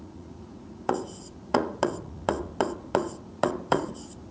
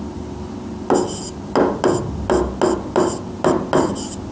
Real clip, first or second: second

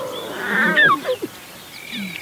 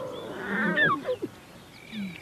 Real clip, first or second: second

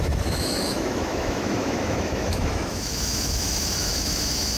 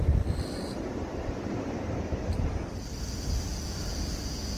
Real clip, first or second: second